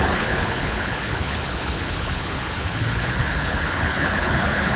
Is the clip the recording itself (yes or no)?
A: no